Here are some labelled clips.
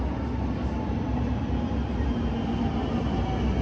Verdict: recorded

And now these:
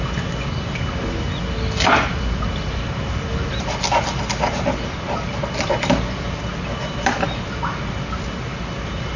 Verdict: recorded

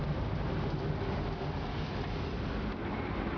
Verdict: recorded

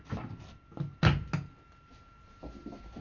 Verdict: recorded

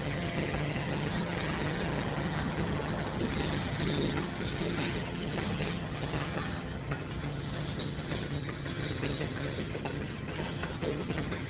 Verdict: remade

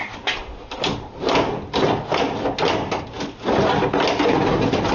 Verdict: recorded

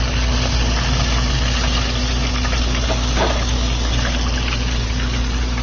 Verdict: recorded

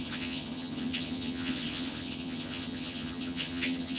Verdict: remade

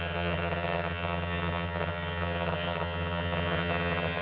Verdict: remade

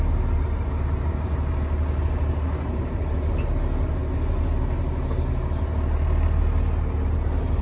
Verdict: recorded